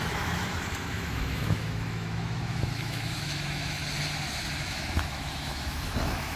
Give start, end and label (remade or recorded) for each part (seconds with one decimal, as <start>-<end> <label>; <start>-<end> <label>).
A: 0.0-3.8 remade; 3.8-4.6 recorded; 4.6-6.4 remade